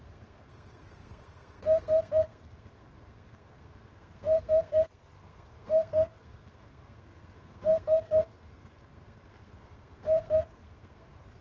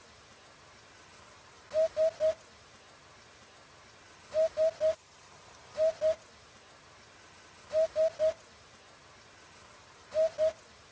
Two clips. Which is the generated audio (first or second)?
first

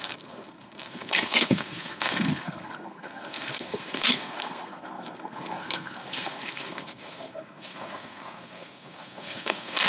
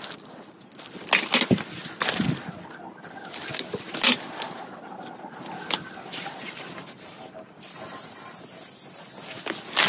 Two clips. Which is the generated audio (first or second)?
first